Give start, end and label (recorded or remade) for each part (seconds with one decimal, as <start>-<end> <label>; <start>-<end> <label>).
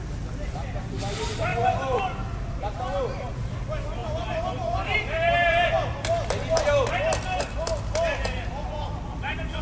0.0-1.5 recorded; 1.5-2.0 remade; 2.0-4.0 recorded; 4.0-6.9 remade; 6.9-9.6 recorded